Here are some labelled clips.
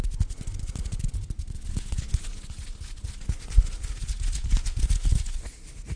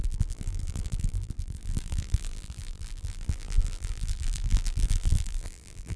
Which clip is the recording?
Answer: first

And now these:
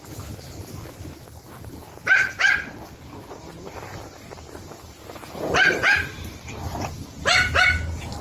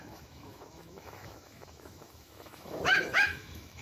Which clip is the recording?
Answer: first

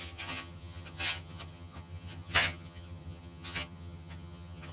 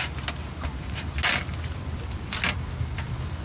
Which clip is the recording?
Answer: second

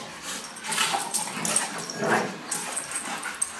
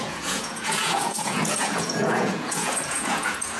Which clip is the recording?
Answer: first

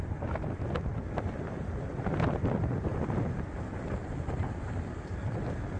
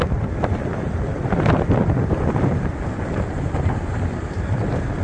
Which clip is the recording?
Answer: first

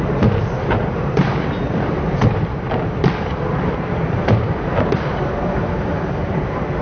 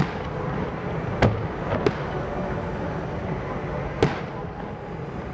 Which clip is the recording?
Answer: second